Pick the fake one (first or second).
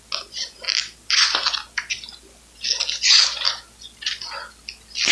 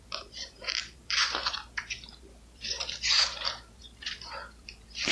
second